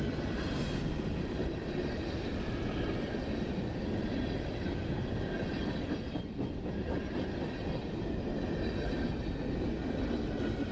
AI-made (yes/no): no